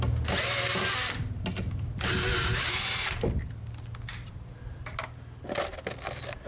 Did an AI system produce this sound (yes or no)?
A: no